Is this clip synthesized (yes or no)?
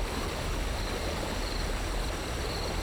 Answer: yes